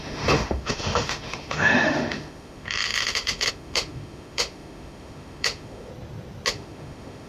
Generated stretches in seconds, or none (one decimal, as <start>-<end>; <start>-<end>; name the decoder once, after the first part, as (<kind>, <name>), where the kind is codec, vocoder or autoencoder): 0.0-5.9 (autoencoder, DAC-VAE); 6.5-7.3